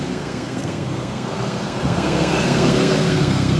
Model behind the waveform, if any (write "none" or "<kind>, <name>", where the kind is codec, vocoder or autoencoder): codec, SNAC